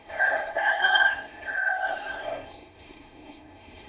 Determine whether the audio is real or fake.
fake